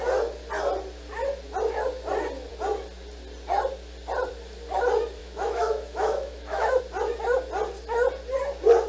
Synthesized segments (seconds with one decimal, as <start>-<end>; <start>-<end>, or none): 5.2-6.8